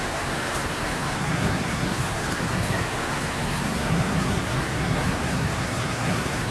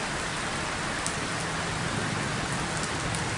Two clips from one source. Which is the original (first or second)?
second